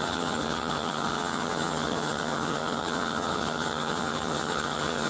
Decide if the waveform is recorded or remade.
remade